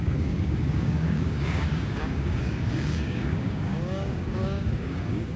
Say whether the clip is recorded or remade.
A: remade